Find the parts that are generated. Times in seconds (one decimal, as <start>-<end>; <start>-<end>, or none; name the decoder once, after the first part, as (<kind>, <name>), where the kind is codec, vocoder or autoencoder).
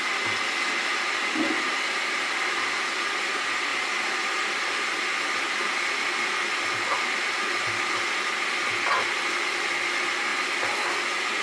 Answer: none